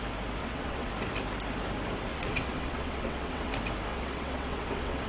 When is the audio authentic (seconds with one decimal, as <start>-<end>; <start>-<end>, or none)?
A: 0.0-0.4; 0.9-2.1; 3.5-3.9